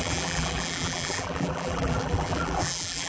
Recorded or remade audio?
remade